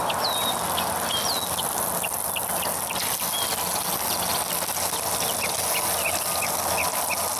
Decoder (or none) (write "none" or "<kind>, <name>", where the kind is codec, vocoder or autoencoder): none